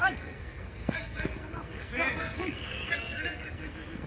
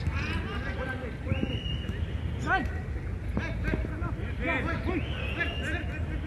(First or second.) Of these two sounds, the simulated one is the first